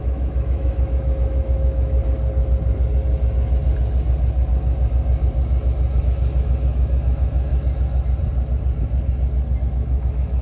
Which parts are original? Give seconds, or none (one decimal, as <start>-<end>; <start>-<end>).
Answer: 2.0-6.0; 7.5-9.6